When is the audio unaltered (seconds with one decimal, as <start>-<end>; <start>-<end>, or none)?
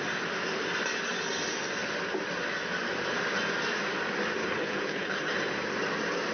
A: 0.0-4.4; 5.3-6.3